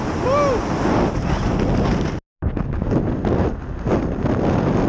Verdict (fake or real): real